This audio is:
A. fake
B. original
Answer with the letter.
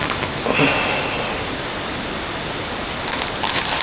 B